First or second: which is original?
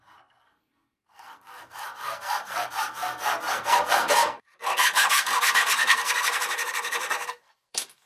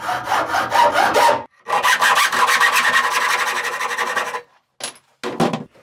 second